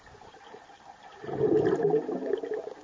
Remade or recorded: recorded